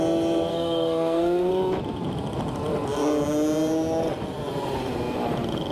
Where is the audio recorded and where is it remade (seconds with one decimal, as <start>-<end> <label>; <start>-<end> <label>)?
0.0-0.5 recorded; 0.5-1.5 remade; 1.5-5.7 recorded